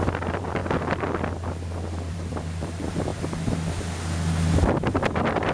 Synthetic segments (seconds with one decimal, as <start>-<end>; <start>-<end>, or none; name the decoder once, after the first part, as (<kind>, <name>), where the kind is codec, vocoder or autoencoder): 0.0-0.6 (vocoder, BigVGAN v2); 2.1-3.1; 4.9-5.5